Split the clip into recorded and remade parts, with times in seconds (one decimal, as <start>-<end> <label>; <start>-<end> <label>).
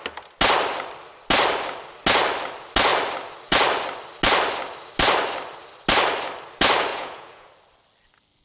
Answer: 0.0-6.9 recorded; 6.9-7.5 remade; 7.5-8.4 recorded